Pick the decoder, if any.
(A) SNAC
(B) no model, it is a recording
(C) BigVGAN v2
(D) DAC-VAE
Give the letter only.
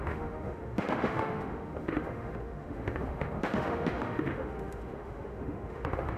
D